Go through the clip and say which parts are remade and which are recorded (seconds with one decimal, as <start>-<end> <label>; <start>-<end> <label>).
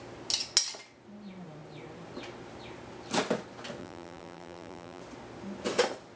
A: 0.0-3.8 recorded; 3.8-5.0 remade; 5.0-6.2 recorded